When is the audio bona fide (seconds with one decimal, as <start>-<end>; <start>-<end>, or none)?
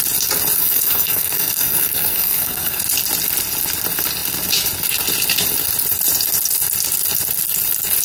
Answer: 0.0-0.6; 2.8-8.0